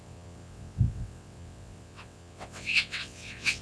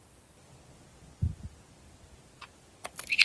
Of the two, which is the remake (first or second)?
first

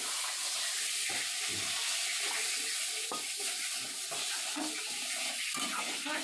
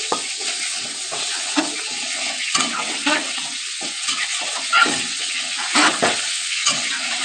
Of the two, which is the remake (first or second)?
second